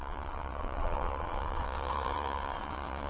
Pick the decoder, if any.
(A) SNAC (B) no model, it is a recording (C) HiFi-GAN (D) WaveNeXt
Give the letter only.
D